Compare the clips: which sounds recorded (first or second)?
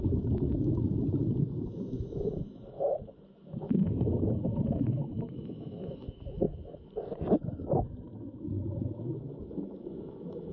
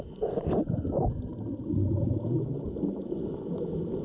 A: second